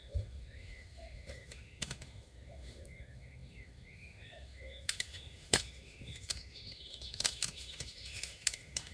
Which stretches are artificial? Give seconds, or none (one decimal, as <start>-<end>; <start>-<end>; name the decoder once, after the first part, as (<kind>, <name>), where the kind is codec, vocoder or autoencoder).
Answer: 0.0-8.9 (autoencoder, DAC-VAE)